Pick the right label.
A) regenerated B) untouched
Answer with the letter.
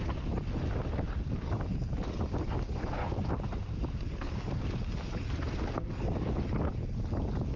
B